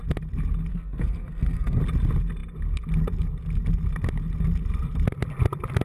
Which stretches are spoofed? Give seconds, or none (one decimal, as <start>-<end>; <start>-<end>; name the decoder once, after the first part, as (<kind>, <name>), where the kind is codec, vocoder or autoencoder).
0.7-1.8 (codec, SNAC)